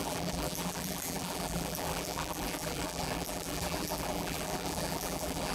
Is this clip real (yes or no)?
no